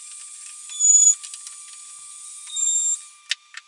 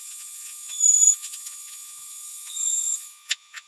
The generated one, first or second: second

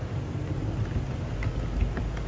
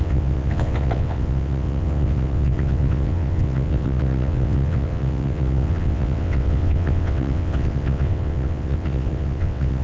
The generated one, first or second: second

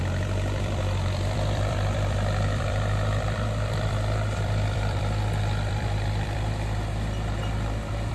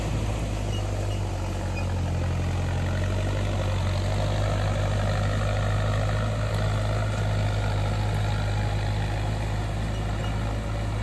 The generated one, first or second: first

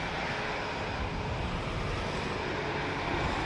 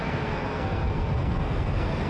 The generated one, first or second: second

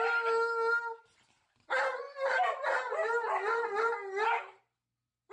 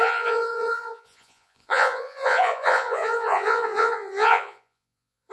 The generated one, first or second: second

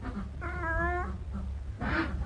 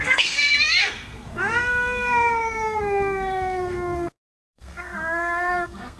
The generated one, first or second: second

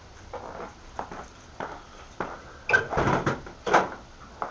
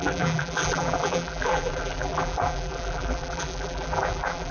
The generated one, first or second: second